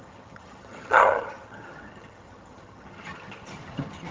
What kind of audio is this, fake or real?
fake